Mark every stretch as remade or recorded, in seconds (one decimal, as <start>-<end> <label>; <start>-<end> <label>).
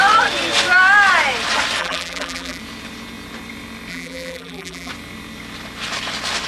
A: 0.0-1.8 recorded; 1.8-2.6 remade; 2.6-3.9 recorded; 3.9-4.9 remade; 4.9-6.5 recorded